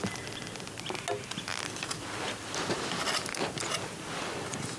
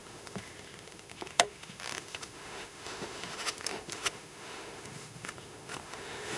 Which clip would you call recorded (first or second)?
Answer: first